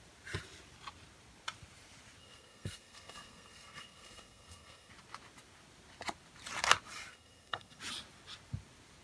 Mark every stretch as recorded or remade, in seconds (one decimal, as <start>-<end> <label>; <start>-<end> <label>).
0.0-2.2 recorded; 2.2-4.9 remade; 4.9-7.1 recorded; 7.1-7.8 remade; 7.8-9.0 recorded